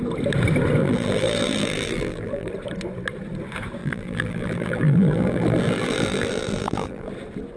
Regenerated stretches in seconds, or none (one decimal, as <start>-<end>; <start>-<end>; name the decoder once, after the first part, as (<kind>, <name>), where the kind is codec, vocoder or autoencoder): 0.8-2.5 (vocoder, BigVGAN v2); 3.8-7.1